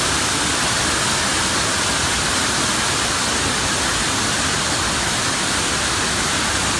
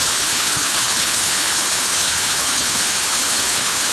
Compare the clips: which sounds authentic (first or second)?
first